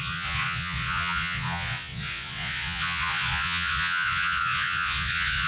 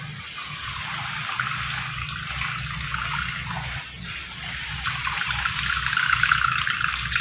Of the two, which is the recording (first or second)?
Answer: second